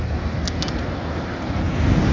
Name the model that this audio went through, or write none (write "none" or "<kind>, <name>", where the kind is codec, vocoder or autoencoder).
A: none